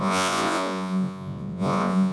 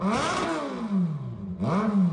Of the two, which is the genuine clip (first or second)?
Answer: second